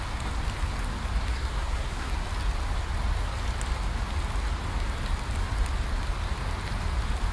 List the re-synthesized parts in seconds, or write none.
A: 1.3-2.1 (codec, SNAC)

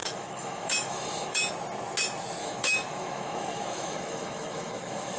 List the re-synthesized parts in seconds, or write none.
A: 0.0-1.5 (autoencoder, DAC-VAE); 2.4-5.2

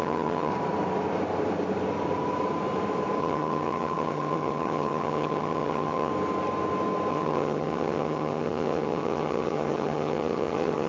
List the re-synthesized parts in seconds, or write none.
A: 0.0-0.5 (vocoder, HiFi-GAN); 3.2-6.1; 7.1-10.9